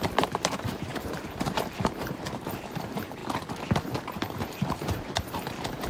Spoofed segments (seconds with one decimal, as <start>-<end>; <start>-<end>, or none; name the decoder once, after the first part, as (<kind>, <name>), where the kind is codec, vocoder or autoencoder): 0.0-3.2 (vocoder, BigVGAN v2); 3.8-5.9

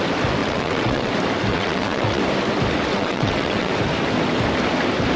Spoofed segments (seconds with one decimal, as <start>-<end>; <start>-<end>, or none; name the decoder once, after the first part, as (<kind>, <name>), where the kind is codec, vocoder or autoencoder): 0.4-1.1 (vocoder, WaveNeXt); 1.5-2.2; 2.9-3.7

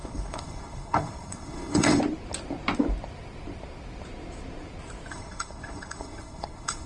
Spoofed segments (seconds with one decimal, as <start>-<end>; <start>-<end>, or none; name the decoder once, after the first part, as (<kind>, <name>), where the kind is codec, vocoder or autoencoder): 0.0-2.0 (codec, HILCodec); 5.1-6.9